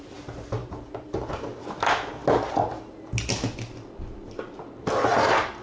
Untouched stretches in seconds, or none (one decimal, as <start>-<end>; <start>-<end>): 0.0-0.6; 1.6-5.6